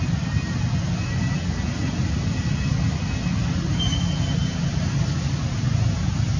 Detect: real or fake real